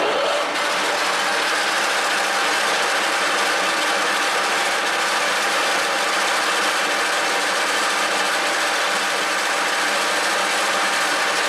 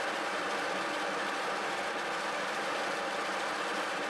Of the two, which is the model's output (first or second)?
second